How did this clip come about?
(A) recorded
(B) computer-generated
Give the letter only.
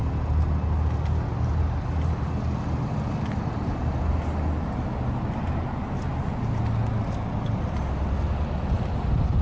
A